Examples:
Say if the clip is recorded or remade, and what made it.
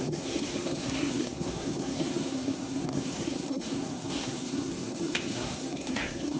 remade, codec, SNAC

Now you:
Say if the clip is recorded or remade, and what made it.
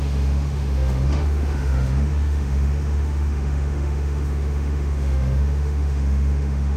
remade, autoencoder, DAC-VAE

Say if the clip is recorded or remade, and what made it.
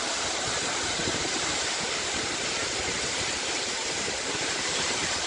remade, vocoder, BigVGAN v2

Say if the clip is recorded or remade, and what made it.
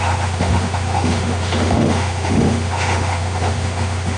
remade, autoencoder, DAC-VAE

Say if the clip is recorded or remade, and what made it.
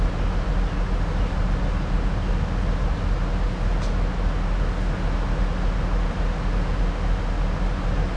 recorded